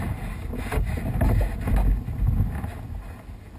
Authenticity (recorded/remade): recorded